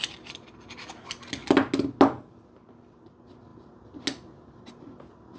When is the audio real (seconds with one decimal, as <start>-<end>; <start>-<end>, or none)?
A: 0.0-5.4

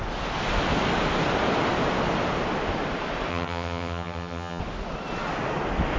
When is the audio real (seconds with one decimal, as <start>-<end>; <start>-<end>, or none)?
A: 0.0-3.3; 4.6-6.0